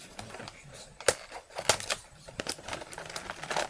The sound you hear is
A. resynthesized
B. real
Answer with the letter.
B